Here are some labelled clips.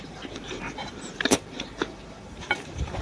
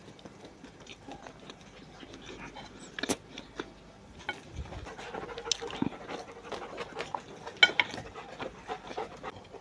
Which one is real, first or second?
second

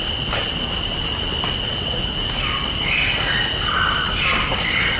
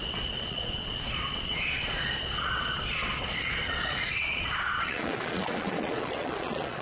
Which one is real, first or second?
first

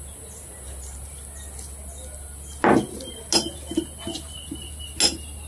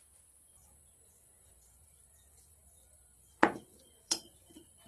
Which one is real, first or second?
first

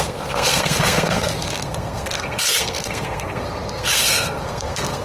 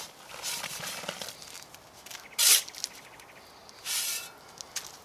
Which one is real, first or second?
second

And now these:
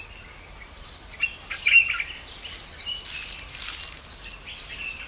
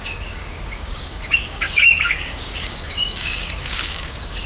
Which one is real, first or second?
first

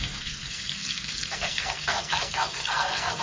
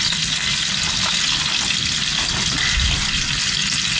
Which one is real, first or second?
second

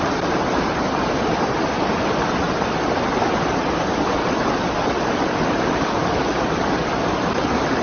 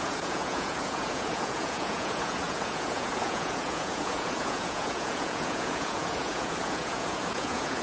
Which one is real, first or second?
first